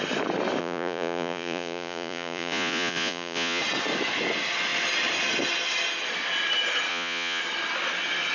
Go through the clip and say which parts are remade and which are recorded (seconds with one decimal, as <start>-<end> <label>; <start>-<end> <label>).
0.0-0.6 recorded; 0.6-3.6 remade; 3.6-6.9 recorded; 6.9-7.4 remade; 7.4-8.3 recorded